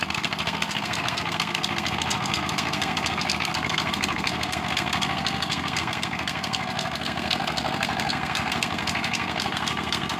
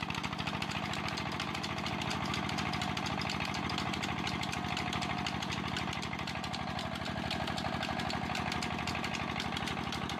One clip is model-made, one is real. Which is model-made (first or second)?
first